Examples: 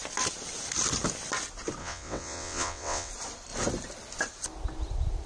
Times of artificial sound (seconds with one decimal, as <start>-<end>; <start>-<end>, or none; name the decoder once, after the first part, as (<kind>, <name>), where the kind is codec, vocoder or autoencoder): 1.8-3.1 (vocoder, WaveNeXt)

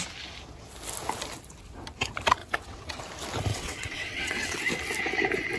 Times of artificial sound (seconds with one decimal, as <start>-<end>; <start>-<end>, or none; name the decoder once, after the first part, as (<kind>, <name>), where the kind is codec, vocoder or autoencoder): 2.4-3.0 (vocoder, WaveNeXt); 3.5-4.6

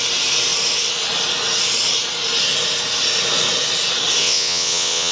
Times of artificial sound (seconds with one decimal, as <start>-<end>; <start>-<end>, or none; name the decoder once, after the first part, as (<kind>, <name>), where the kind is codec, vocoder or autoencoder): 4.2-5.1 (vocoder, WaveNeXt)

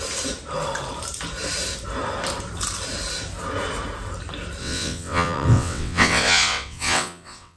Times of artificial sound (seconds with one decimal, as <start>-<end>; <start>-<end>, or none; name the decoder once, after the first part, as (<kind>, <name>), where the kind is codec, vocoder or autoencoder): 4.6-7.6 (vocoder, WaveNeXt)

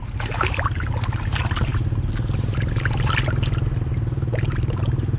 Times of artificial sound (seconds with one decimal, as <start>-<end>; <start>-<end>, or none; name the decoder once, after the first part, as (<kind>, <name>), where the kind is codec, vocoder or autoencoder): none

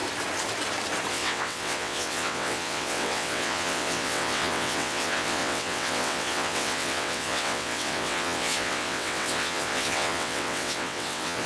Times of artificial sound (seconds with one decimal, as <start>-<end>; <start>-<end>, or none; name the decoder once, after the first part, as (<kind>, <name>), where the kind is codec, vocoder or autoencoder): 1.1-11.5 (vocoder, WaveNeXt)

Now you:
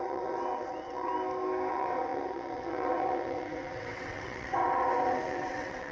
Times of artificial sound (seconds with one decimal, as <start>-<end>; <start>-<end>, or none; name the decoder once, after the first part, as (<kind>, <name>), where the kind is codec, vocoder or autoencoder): 0.0-1.1 (vocoder, WaveNeXt); 1.7-5.9

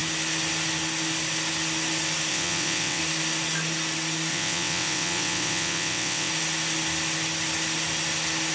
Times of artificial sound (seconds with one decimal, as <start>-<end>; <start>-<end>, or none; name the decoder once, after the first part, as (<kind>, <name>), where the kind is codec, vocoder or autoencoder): 2.3-3.0 (vocoder, WaveNeXt); 4.3-6.3